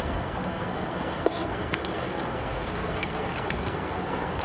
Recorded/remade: remade